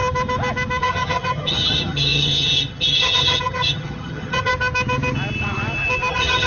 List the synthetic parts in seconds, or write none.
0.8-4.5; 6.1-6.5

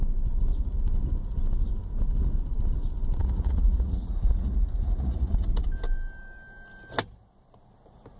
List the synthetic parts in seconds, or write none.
3.2-5.5